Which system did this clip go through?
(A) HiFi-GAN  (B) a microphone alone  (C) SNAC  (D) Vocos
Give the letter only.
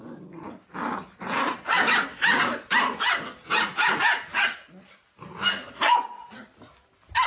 B